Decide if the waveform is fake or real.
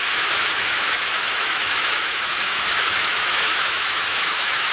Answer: fake